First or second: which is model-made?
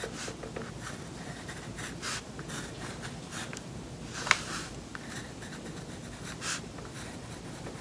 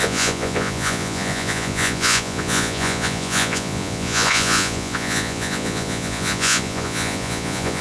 second